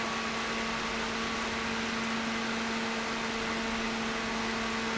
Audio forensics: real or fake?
real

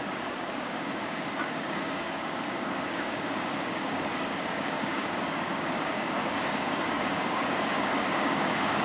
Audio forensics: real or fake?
fake